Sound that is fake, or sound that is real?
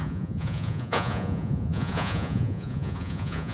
fake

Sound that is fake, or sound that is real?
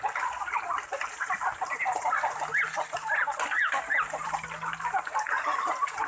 real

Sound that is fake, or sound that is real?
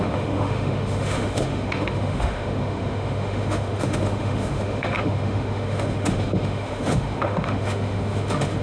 fake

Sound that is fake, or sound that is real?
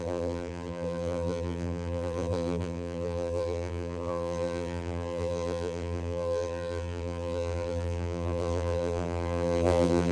fake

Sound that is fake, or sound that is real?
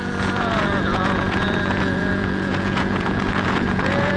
fake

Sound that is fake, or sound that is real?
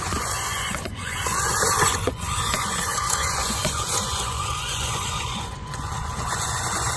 fake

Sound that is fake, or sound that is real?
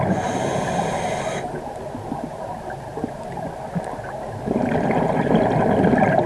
real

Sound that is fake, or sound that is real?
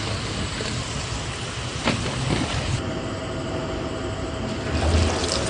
real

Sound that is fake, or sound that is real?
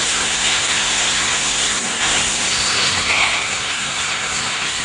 fake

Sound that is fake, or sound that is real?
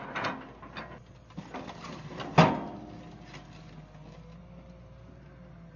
real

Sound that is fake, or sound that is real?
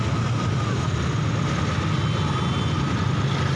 real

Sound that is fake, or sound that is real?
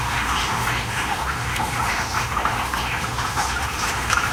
fake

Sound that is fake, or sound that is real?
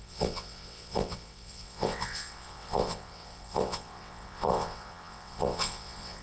fake